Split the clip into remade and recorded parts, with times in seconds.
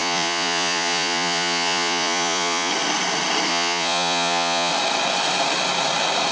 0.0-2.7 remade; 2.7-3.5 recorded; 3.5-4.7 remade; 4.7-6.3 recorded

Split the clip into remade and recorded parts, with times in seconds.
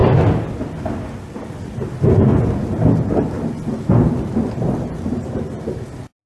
0.0-6.3 recorded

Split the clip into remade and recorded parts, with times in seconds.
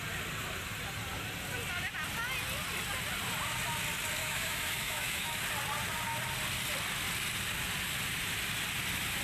0.0-4.2 recorded; 4.2-5.4 remade; 5.4-9.2 recorded